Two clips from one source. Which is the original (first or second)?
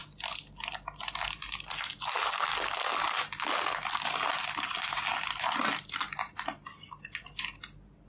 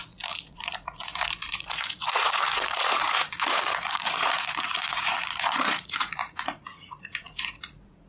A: first